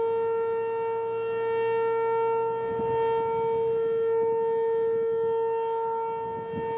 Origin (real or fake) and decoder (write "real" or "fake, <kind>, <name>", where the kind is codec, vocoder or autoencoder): real